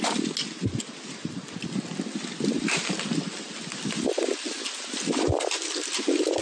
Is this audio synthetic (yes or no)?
no